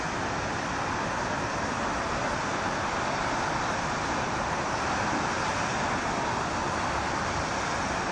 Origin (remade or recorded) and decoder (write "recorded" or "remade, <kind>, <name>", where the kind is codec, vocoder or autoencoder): recorded